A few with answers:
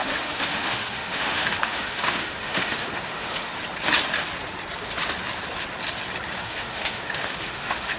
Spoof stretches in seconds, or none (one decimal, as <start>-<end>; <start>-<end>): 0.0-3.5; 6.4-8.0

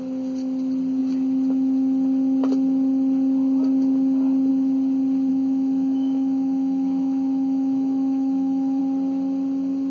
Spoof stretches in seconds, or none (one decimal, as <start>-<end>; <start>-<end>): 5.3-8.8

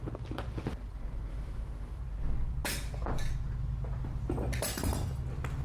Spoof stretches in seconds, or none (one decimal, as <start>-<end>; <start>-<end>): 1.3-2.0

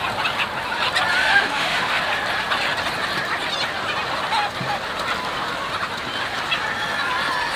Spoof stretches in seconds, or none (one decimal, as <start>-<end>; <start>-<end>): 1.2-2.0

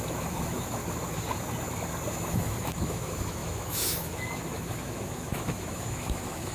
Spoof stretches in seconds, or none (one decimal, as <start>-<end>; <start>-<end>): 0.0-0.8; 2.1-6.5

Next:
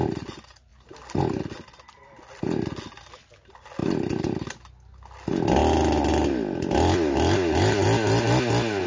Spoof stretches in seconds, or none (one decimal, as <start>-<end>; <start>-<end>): none

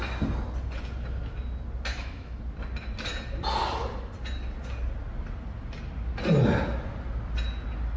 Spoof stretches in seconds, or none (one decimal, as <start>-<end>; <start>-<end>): 1.9-2.4